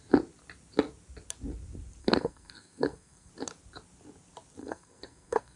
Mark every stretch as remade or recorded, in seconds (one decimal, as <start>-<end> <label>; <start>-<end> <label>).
0.0-2.0 recorded; 2.0-3.3 remade; 3.3-4.6 recorded; 4.6-5.6 remade